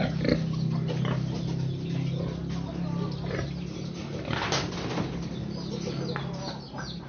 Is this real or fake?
real